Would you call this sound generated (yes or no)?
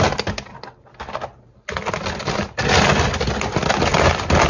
no